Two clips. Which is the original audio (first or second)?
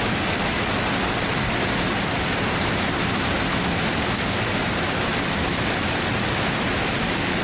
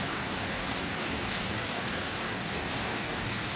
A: first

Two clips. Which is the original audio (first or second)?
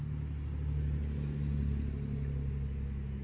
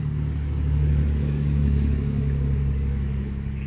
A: first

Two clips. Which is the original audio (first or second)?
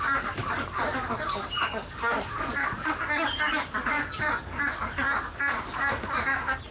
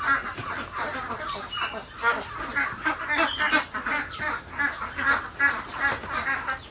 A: second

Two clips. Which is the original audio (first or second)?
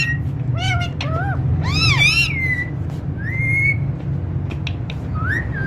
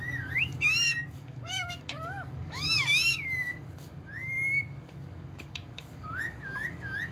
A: first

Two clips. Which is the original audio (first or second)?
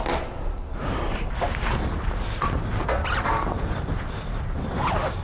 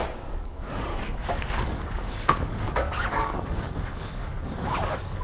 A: first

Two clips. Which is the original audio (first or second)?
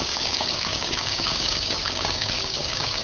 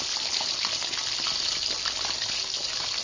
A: second